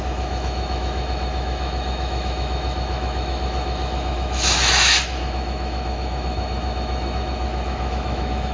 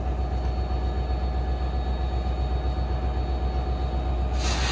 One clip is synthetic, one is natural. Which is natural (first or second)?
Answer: second